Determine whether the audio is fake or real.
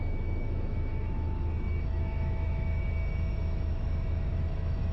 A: fake